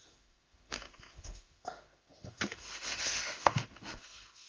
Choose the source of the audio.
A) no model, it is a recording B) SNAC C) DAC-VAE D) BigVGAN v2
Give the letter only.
C